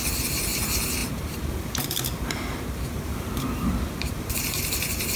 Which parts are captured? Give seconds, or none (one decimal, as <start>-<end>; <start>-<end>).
none